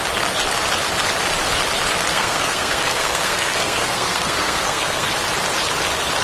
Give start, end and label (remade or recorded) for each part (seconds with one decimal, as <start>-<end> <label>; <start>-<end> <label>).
0.0-2.1 recorded; 2.1-5.1 remade; 5.1-6.2 recorded